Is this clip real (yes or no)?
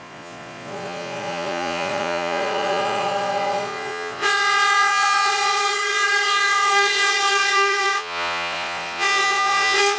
no